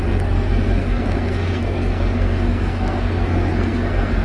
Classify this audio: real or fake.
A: fake